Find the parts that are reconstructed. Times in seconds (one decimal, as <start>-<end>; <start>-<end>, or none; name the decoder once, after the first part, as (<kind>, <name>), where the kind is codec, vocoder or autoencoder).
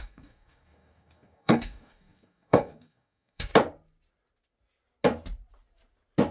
0.0-3.5 (codec, DAC)